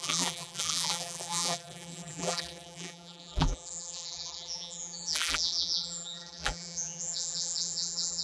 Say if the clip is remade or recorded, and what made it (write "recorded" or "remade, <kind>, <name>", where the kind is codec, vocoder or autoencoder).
remade, vocoder, BigVGAN v2